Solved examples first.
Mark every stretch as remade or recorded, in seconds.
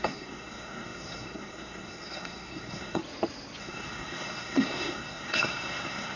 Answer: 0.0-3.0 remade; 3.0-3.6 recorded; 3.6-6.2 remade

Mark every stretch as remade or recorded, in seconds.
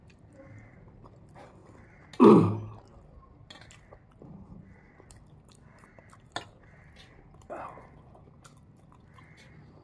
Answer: 0.0-9.8 recorded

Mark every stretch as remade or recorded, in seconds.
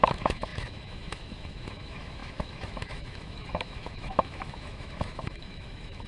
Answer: 0.0-6.1 remade